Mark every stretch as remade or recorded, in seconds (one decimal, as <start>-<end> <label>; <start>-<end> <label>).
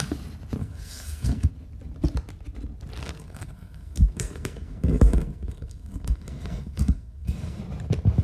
0.0-0.6 recorded; 0.6-1.5 remade; 1.5-3.0 recorded; 3.0-7.6 remade; 7.6-8.2 recorded